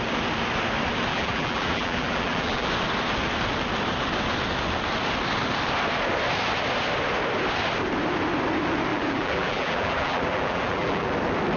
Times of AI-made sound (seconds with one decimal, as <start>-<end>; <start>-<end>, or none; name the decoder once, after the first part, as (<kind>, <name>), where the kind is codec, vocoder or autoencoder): 1.1-2.7 (vocoder, BigVGAN v2); 8.9-11.1